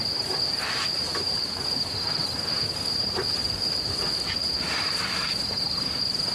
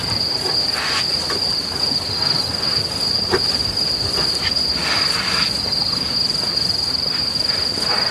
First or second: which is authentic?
second